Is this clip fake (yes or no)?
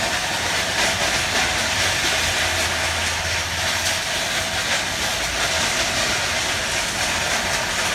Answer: no